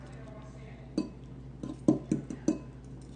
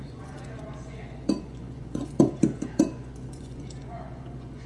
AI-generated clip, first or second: second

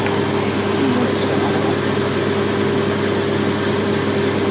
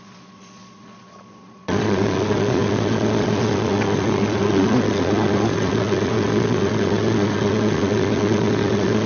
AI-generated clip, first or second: second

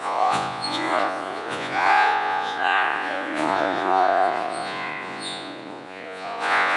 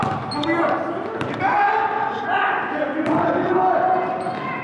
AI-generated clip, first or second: first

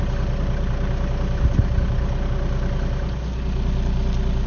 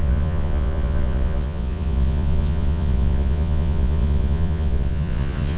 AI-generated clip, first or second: second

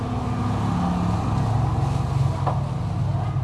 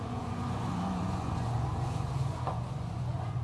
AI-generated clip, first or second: second